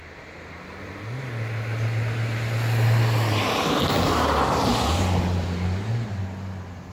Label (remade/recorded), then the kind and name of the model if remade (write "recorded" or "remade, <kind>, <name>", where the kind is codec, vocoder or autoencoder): recorded